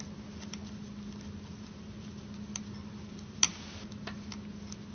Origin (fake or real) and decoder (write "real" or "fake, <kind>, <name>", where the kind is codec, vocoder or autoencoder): real